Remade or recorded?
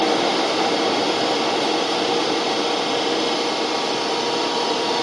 recorded